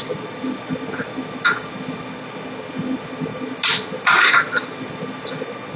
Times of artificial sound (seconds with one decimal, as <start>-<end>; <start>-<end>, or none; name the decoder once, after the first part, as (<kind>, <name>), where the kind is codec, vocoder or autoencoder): none